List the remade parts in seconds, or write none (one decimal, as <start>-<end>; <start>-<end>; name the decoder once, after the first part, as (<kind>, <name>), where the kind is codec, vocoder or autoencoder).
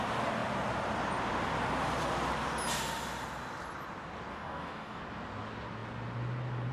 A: 4.3-5.0 (codec, DAC)